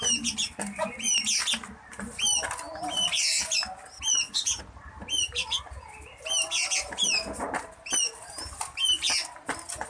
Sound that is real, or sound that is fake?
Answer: real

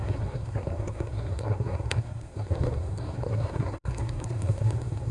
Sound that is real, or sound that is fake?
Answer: fake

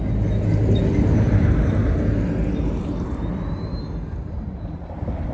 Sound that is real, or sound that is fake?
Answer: real